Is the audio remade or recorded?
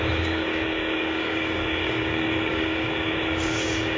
remade